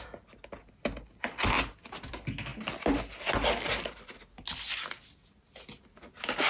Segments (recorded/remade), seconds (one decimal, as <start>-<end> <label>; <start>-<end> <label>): 0.0-6.5 recorded